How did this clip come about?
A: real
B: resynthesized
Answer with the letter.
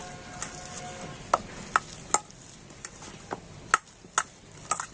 A